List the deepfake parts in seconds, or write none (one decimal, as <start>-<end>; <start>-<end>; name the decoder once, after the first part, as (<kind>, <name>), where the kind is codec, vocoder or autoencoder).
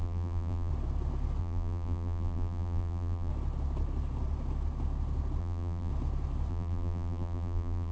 0.0-0.7 (vocoder, BigVGAN v2); 1.4-3.3; 5.4-5.9; 6.5-7.9